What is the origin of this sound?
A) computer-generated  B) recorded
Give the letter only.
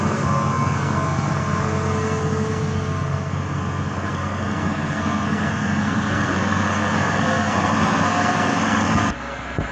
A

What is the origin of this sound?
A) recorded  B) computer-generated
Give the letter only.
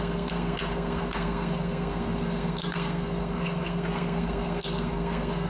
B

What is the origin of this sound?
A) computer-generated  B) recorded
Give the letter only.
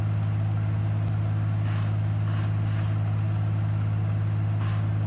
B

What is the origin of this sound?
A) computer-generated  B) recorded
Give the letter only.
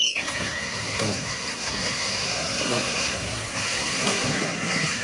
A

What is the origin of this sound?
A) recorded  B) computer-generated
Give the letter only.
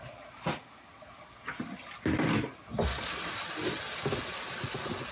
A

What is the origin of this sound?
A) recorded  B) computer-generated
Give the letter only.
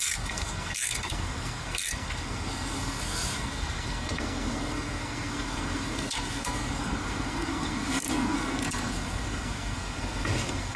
B